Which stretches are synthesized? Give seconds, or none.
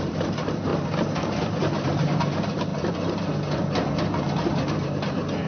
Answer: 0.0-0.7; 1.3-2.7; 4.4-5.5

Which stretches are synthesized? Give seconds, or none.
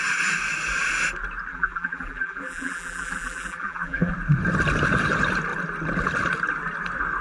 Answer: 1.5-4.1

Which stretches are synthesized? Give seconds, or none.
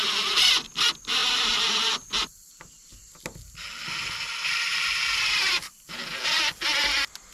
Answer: 0.0-0.7; 1.2-3.1; 4.7-6.5